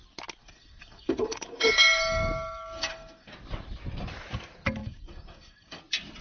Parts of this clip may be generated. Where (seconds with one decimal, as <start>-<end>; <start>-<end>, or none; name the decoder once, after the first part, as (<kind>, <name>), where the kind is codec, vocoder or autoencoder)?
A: 0.4-3.3 (codec, DAC); 4.8-5.8